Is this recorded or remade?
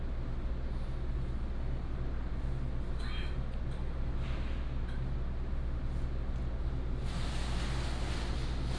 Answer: recorded